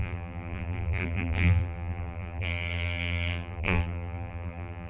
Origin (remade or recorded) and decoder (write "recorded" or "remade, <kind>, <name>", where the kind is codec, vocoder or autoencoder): remade, vocoder, BigVGAN v2